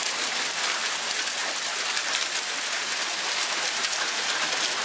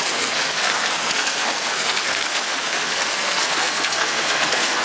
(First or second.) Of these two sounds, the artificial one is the second